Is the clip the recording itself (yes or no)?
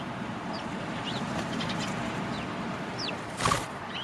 no